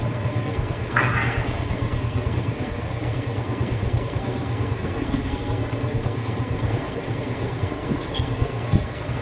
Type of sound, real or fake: fake